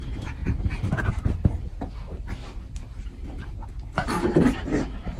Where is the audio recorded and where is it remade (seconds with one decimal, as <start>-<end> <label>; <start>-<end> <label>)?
0.0-5.2 recorded